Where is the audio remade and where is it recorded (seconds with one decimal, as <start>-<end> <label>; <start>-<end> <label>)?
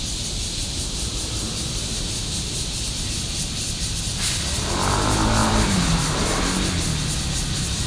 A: 0.0-0.6 recorded; 0.6-3.4 remade; 3.4-5.4 recorded; 5.4-6.4 remade; 6.4-7.9 recorded